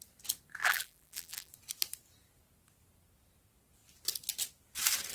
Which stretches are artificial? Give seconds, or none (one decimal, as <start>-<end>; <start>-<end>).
0.6-1.5